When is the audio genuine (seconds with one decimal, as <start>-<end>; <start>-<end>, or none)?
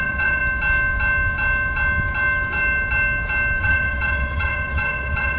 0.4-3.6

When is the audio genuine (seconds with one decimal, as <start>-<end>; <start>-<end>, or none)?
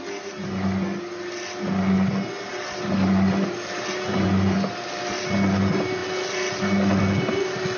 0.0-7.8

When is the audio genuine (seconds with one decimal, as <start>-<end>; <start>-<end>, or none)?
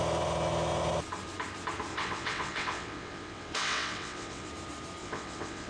0.0-1.9; 4.5-5.0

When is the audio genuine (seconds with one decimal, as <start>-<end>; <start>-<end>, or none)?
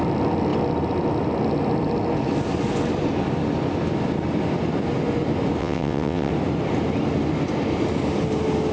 0.0-5.6; 6.3-8.7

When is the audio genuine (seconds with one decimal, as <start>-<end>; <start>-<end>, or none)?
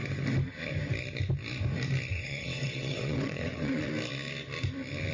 0.0-2.1; 3.9-5.1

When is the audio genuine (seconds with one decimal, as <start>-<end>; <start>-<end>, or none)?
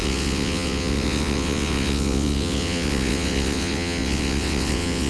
none